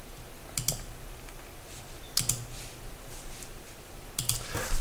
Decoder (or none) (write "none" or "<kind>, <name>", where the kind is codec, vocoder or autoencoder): none